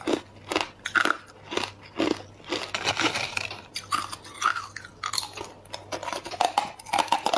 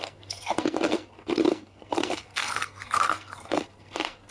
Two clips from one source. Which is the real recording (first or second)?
first